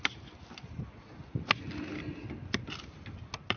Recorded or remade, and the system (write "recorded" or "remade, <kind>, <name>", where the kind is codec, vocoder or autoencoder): recorded